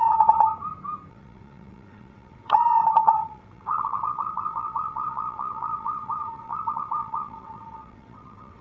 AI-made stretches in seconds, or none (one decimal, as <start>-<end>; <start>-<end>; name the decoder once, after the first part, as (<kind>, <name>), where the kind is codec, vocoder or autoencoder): 0.0-0.5 (vocoder, WaveNeXt); 1.1-8.6